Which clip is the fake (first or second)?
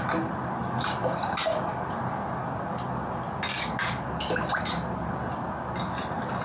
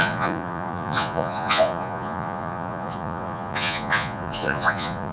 second